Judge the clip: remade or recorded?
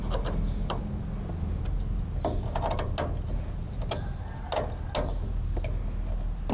recorded